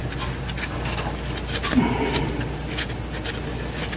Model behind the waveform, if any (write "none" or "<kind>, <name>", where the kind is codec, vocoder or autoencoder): none